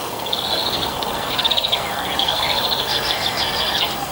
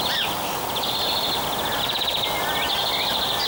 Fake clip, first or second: first